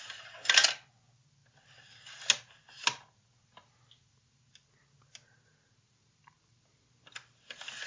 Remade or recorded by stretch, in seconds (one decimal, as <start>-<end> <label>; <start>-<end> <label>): 0.0-7.9 recorded